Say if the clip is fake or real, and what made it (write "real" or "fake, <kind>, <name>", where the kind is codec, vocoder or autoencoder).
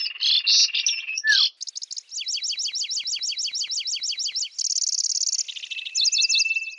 real